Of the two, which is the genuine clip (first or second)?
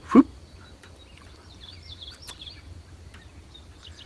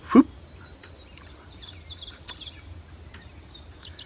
first